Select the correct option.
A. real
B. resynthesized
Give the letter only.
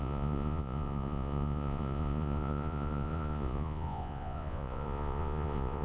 B